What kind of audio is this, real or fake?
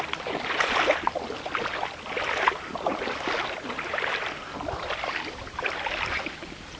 real